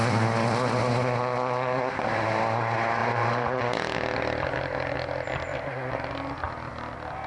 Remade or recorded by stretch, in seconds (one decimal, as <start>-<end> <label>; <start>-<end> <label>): 0.0-3.0 recorded; 3.0-3.6 remade; 3.6-5.5 recorded; 5.5-6.1 remade; 6.1-7.3 recorded